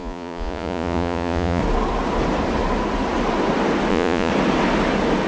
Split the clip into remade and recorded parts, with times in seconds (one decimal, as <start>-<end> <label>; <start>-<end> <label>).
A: 0.0-1.6 remade; 1.6-3.9 recorded; 3.9-4.3 remade; 4.3-5.3 recorded